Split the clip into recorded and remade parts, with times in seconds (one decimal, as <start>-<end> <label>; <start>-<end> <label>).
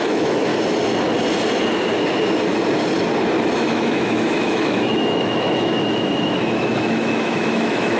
0.0-0.5 remade; 0.5-3.6 recorded; 3.6-8.0 remade